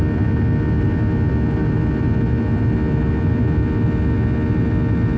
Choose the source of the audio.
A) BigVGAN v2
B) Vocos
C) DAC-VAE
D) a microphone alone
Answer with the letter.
D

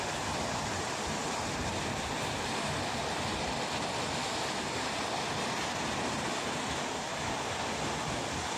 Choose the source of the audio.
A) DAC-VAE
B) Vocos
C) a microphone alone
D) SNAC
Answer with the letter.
C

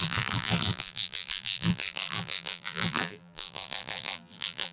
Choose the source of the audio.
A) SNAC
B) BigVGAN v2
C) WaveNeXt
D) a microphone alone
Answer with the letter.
B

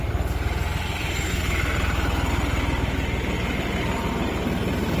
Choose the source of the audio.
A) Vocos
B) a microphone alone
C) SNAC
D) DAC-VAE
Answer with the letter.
B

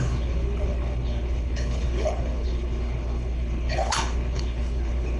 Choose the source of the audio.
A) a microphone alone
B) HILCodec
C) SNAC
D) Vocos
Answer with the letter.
B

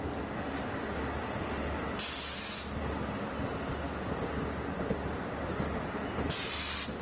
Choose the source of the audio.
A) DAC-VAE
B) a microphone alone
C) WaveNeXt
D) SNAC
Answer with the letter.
B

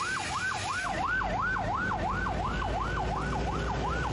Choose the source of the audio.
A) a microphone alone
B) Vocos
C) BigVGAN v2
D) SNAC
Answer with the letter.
A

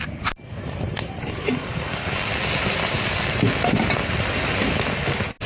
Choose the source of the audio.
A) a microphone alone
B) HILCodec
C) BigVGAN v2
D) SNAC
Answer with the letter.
A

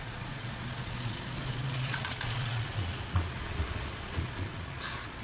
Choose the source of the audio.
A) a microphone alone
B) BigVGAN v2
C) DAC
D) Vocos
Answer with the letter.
D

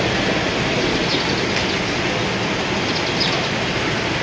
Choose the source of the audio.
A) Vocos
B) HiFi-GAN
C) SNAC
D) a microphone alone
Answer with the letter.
D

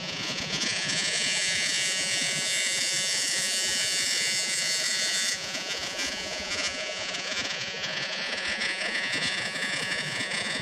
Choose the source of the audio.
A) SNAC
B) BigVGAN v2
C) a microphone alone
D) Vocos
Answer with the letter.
D